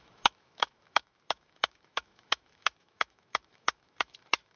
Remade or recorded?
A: remade